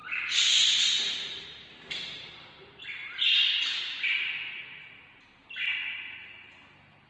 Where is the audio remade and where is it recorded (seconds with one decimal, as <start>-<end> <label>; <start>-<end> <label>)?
0.0-2.8 remade; 2.8-7.1 recorded